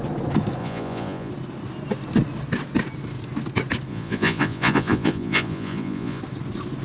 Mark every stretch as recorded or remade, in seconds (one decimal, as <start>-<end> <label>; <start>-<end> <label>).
0.0-0.6 recorded; 0.6-1.3 remade; 1.3-3.9 recorded; 3.9-6.2 remade; 6.2-6.8 recorded